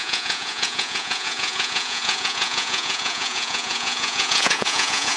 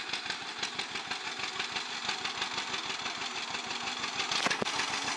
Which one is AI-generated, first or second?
first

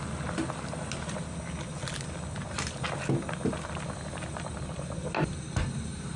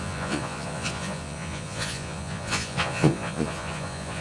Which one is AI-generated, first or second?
second